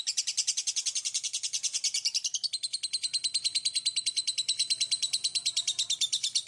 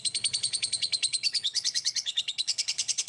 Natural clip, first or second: first